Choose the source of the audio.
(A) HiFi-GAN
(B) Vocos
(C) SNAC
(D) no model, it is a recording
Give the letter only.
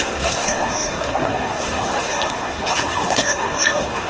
C